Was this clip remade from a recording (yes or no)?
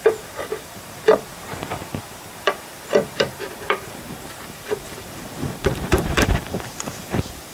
yes